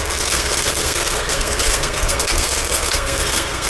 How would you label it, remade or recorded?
remade